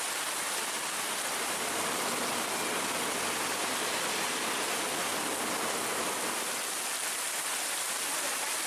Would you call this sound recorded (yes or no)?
yes